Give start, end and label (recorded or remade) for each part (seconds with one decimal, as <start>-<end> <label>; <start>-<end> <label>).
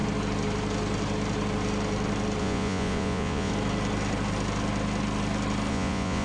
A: 0.0-2.4 recorded; 2.4-3.5 remade; 3.5-5.7 recorded; 5.7-6.2 remade